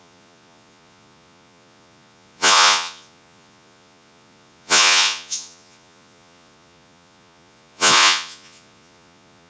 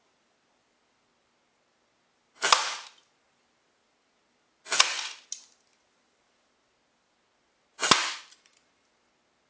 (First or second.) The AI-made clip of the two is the first